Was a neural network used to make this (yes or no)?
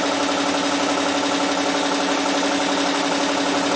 no